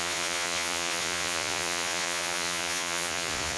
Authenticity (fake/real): fake